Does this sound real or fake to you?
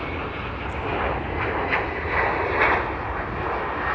real